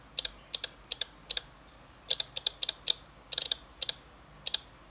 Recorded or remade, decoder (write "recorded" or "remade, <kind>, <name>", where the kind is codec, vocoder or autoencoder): recorded